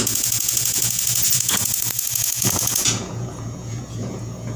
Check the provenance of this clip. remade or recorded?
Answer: remade